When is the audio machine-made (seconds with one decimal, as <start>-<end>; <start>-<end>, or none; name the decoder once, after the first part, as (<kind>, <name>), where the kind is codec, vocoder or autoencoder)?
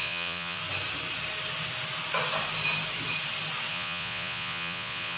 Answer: 0.0-0.6 (vocoder, Vocos); 3.7-5.2